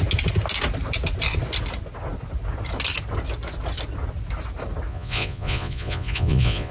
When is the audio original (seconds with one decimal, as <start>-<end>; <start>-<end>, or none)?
0.0-4.9

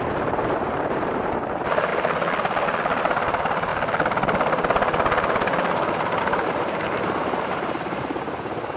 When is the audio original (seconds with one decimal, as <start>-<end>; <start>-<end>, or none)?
1.9-3.0; 3.7-6.2

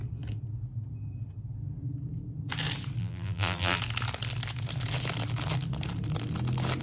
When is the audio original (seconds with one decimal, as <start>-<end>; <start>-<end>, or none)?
0.0-3.0; 3.8-6.8

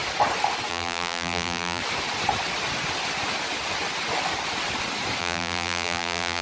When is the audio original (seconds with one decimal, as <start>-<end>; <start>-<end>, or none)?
0.0-0.7; 1.8-5.2

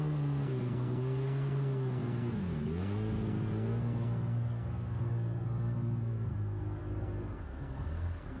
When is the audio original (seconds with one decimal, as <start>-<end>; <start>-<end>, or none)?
none

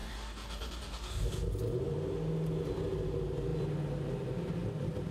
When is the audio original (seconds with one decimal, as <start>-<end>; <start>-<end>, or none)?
1.3-5.1

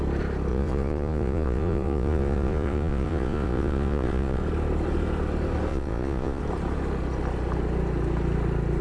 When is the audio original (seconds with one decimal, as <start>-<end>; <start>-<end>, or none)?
0.0-0.5; 4.4-5.7; 6.4-8.8

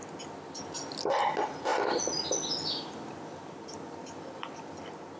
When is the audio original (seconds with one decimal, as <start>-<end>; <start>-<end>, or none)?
0.0-5.2